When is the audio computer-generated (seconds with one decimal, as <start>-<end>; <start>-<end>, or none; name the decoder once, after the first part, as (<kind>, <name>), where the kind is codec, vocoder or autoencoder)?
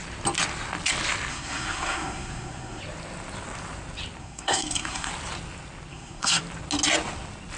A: 1.3-2.8 (codec, SNAC); 4.2-5.1; 5.9-6.4